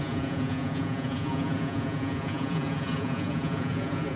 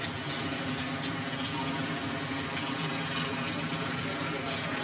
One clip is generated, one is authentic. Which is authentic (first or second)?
second